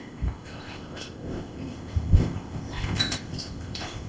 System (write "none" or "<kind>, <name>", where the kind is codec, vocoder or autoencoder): codec, ZipCodec